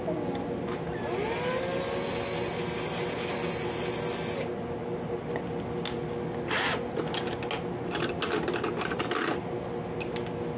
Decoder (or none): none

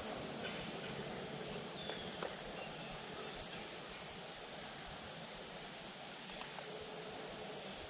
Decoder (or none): none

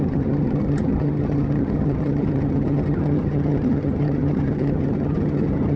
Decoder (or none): vocoder, HiFi-GAN